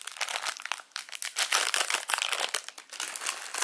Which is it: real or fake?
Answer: real